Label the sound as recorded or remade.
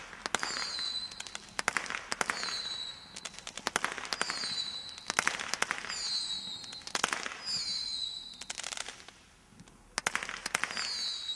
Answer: recorded